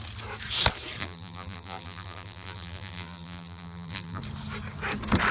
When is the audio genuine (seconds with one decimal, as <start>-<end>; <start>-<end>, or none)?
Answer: 0.0-1.0; 4.2-5.3